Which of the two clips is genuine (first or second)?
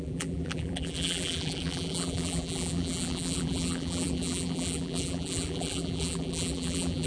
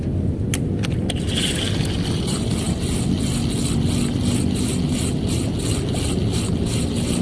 second